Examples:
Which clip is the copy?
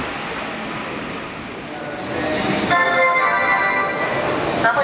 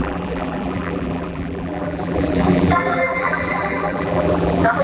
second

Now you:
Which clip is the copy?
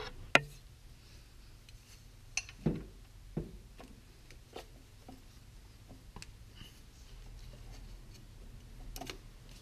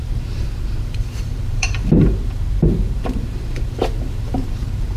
second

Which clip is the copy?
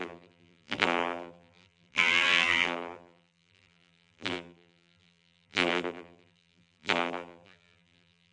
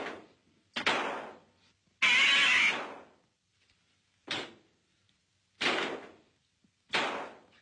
first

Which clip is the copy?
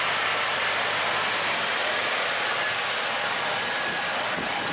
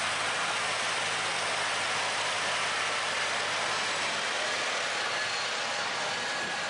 first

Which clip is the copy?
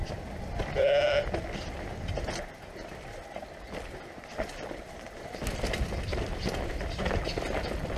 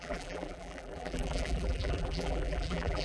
second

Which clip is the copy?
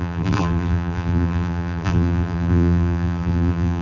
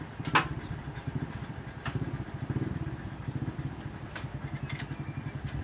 first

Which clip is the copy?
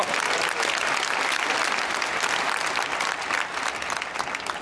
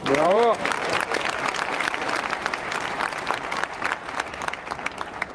second